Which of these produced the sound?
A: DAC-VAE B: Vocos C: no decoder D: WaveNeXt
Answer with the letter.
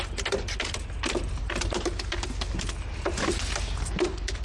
C